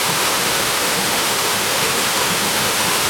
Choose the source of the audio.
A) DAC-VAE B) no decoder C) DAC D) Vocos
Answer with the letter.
A